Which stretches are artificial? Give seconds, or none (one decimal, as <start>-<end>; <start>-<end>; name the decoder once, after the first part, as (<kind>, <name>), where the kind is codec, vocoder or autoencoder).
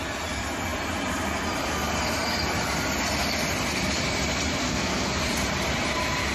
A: 4.6-5.1 (codec, SNAC)